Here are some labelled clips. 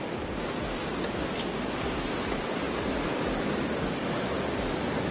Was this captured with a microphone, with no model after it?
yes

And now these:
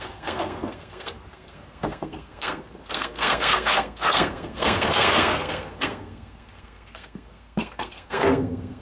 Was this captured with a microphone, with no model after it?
no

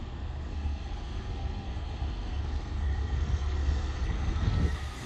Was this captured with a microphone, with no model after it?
no